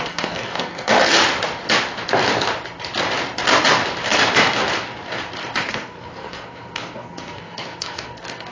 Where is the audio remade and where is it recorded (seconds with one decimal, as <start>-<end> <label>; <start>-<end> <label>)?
0.0-0.9 remade; 0.9-5.6 recorded; 5.6-8.5 remade

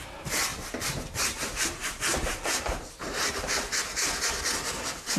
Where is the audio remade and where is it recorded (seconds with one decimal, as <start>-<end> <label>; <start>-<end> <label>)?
0.0-0.5 recorded; 0.5-3.6 remade; 3.6-5.2 recorded